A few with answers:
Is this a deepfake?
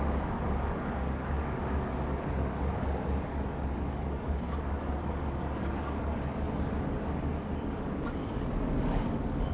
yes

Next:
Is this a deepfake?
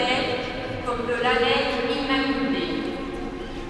no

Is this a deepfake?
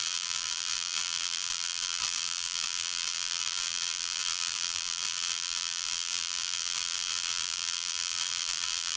yes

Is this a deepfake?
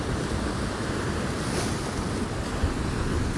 no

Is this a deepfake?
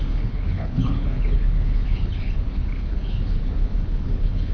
yes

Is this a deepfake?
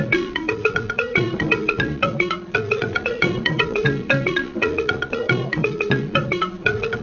yes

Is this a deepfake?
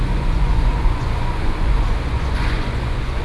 yes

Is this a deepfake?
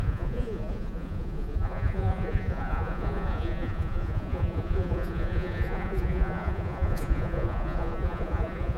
yes